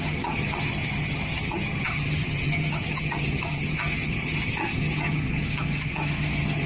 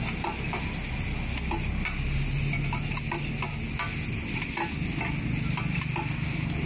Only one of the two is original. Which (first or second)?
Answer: second